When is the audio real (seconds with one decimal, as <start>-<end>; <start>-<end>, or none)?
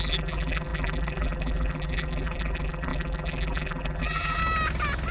4.4-5.1